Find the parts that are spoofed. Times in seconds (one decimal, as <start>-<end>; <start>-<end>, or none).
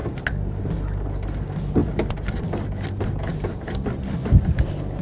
none